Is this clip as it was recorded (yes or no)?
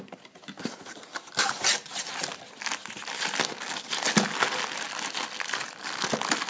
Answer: yes